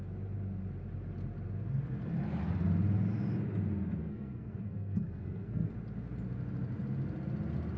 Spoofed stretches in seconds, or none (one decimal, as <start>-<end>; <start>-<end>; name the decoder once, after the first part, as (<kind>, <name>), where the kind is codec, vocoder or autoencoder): 4.0-5.7 (codec, SNAC)